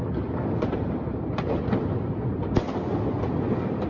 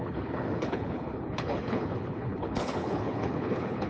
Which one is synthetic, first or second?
second